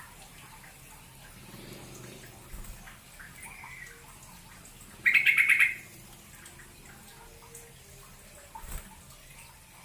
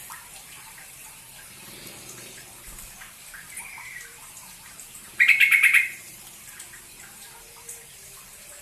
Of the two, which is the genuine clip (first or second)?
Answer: first